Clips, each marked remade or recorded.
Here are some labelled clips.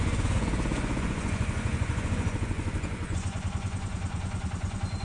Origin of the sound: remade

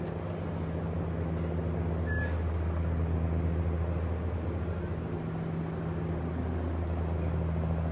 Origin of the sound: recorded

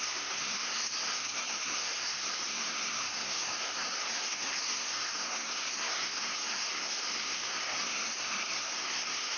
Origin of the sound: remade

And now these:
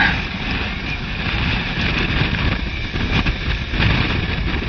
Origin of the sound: recorded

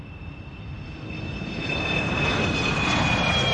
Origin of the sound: recorded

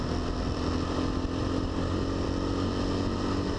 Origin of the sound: recorded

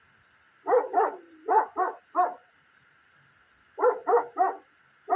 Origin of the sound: recorded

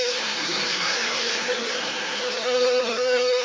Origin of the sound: remade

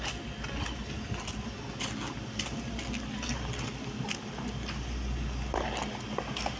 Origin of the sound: recorded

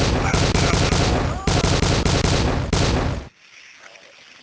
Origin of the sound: recorded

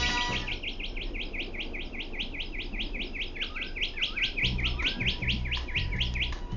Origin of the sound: recorded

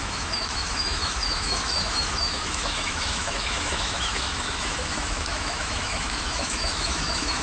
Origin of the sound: remade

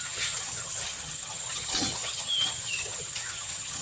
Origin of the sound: remade